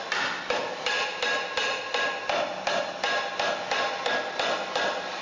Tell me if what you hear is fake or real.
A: real